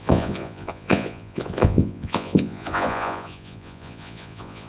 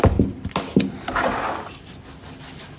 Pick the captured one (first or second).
second